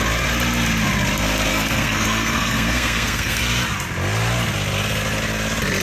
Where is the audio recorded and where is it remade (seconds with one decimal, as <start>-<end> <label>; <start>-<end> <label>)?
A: 0.0-1.5 recorded; 1.5-3.4 remade; 3.4-5.8 recorded